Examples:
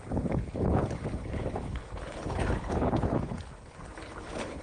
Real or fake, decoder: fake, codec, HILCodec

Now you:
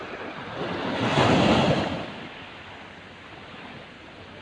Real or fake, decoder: real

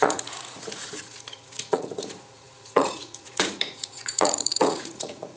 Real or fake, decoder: fake, vocoder, Vocos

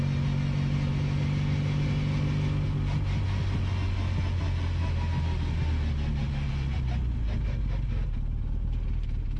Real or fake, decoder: real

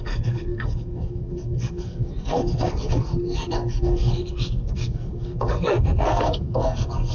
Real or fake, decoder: fake, codec, SNAC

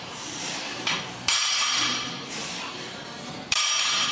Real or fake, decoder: fake, vocoder, BigVGAN v2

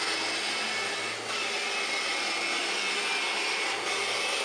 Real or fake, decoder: real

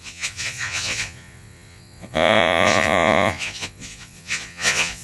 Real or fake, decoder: fake, vocoder, Vocos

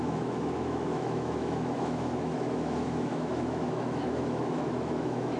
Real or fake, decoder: fake, autoencoder, DAC-VAE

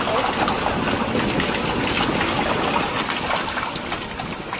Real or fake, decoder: real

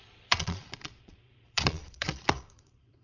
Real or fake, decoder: fake, vocoder, Vocos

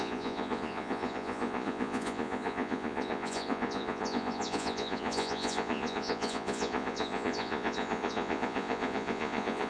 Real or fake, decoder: fake, vocoder, Vocos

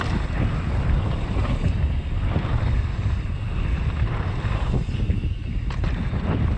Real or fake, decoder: real